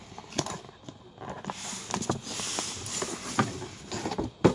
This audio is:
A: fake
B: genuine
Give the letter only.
B